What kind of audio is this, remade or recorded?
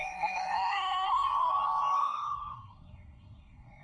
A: remade